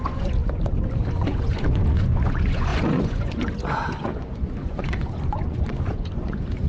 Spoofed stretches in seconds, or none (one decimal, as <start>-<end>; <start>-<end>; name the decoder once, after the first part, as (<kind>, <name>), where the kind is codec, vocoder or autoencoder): 0.0-0.4 (vocoder, Vocos); 1.1-6.7